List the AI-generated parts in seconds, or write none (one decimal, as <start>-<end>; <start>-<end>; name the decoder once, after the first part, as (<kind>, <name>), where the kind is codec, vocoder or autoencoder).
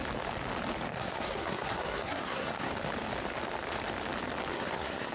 0.9-2.7 (codec, SNAC); 4.5-5.1